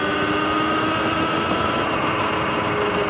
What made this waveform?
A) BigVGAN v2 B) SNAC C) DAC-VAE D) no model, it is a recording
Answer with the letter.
D